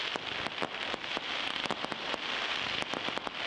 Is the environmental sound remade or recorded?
remade